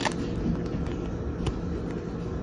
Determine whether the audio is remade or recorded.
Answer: recorded